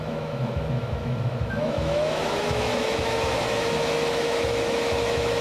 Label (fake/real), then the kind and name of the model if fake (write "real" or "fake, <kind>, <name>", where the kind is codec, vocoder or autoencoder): fake, autoencoder, DAC-VAE